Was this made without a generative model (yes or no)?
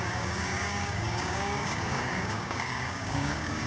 no